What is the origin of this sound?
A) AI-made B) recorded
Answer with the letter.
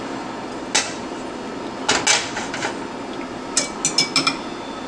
B